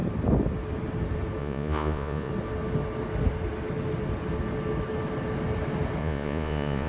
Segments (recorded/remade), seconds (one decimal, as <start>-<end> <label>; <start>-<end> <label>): 0.0-1.4 recorded; 1.4-2.3 remade; 2.3-6.0 recorded; 6.0-6.9 remade